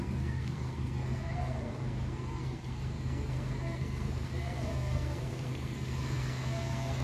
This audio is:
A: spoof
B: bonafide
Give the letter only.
A